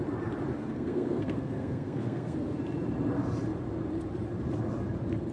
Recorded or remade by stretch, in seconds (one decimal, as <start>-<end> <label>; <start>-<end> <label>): 0.0-0.5 recorded; 0.5-2.5 remade; 2.5-5.3 recorded